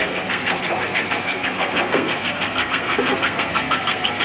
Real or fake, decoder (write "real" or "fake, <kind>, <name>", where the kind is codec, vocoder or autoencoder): fake, codec, SNAC